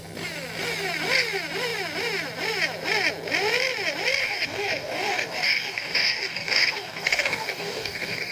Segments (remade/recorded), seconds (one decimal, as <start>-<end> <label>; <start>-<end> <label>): 0.0-4.2 recorded; 4.2-8.3 remade